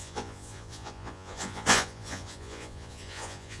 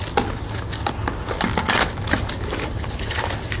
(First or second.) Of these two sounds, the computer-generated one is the first